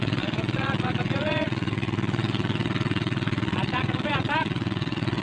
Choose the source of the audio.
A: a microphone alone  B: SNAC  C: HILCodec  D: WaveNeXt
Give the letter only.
D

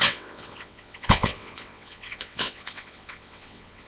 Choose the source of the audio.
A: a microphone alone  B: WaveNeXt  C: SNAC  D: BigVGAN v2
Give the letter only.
B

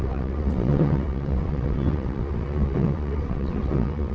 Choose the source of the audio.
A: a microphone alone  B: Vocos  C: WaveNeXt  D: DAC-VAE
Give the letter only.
C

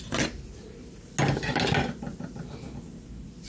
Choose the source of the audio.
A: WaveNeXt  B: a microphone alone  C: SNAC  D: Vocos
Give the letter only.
B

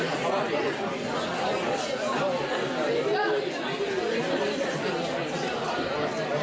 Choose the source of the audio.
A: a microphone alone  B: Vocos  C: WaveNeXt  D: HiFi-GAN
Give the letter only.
A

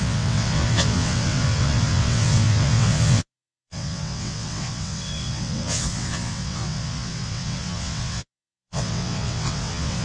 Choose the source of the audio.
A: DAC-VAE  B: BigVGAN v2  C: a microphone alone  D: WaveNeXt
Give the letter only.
D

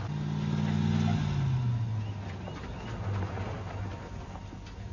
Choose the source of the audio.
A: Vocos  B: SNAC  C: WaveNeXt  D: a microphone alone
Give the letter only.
D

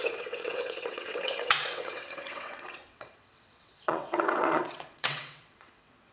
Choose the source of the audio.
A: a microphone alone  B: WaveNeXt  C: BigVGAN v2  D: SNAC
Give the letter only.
B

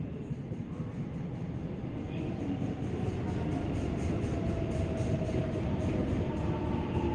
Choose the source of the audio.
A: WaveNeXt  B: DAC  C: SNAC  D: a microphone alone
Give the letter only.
D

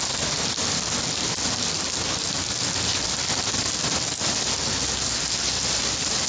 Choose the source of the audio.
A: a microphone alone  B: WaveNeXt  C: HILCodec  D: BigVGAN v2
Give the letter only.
A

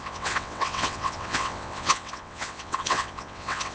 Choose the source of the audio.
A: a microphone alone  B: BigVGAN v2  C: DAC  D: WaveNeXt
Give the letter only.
D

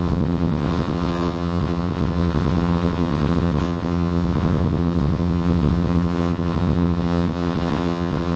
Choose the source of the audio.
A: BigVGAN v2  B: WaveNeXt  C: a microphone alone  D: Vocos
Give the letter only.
B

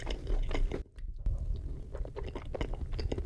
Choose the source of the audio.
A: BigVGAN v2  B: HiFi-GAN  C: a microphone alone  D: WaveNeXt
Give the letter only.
C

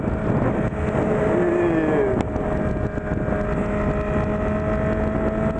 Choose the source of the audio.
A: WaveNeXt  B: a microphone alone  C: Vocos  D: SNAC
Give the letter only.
B